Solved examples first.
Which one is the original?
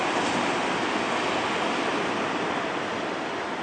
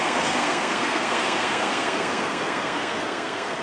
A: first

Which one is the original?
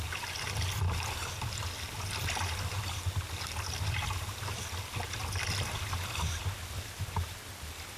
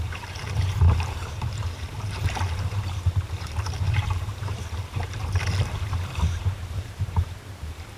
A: first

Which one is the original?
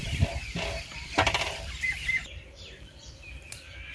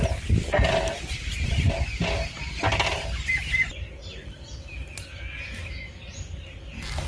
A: second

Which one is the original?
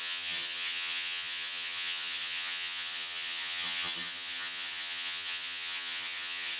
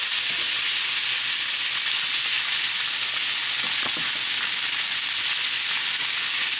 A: second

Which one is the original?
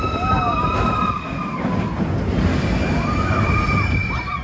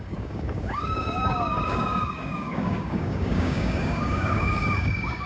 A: first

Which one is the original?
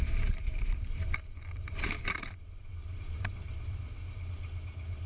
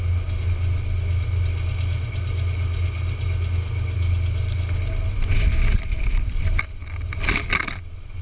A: second